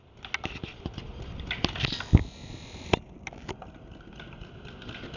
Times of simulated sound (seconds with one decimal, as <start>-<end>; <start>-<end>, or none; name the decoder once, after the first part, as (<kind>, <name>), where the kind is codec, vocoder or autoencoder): none